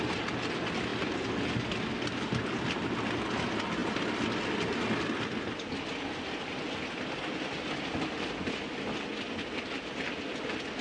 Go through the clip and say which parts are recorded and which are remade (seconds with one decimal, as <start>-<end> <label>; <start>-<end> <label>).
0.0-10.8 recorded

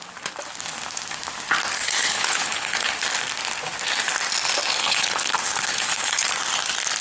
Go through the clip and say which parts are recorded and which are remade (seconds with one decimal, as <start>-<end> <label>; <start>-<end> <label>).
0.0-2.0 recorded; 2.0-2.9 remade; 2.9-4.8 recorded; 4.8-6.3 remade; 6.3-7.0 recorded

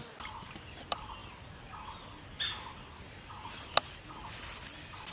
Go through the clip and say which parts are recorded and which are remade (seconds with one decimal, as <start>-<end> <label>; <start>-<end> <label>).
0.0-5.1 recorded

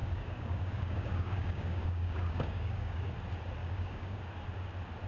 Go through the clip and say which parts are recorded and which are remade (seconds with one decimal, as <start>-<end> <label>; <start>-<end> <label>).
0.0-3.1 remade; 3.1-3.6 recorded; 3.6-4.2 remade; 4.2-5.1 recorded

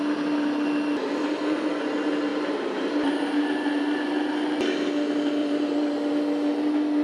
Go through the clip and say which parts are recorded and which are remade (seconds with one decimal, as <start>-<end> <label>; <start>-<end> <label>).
0.0-2.3 recorded; 2.3-4.1 remade; 4.1-5.4 recorded; 5.4-6.1 remade; 6.1-7.0 recorded

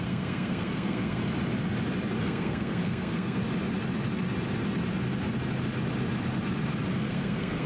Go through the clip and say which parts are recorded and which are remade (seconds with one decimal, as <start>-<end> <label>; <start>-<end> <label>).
0.0-1.2 remade; 1.2-2.2 recorded; 2.2-3.4 remade; 3.4-6.9 recorded; 6.9-7.7 remade

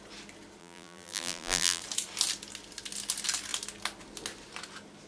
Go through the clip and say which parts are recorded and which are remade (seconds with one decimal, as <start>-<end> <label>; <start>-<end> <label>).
0.0-0.6 recorded; 0.6-1.8 remade; 1.8-5.1 recorded